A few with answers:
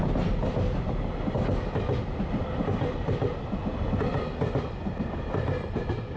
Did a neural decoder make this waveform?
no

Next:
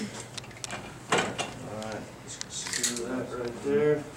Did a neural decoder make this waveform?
no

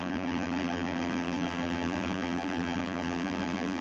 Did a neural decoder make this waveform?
yes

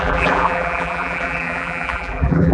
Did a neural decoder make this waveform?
yes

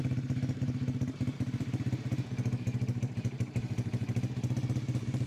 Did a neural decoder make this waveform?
yes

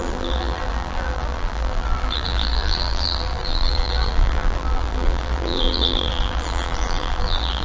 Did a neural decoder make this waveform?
yes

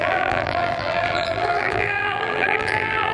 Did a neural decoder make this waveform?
yes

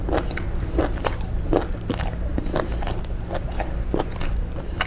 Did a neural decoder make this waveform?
yes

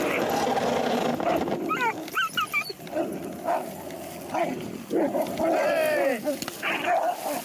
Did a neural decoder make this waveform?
no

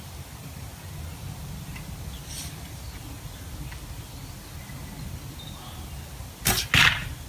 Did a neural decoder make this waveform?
no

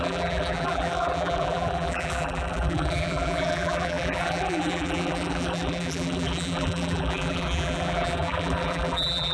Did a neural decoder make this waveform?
yes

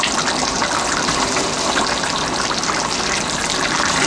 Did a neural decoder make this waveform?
yes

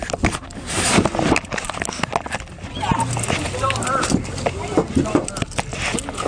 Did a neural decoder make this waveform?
no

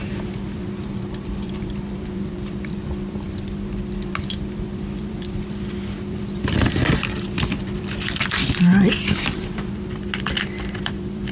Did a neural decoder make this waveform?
yes